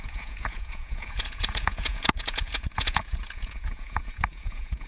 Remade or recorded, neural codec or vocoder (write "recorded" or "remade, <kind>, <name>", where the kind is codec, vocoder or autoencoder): remade, vocoder, Vocos